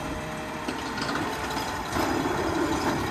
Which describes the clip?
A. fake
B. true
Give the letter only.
A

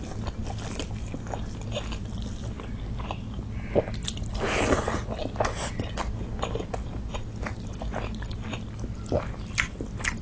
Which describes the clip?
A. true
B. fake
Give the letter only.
A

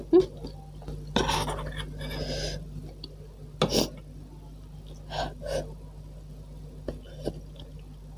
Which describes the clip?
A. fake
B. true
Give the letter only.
B